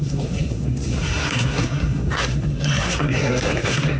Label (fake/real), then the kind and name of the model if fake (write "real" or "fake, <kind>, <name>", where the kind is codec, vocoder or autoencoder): fake, codec, SNAC